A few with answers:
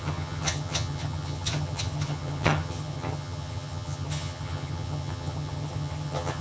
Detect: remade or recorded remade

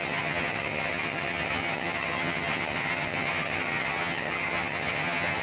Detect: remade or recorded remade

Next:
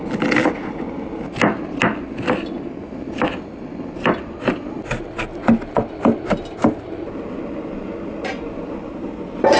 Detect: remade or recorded recorded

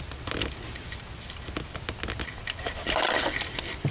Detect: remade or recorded recorded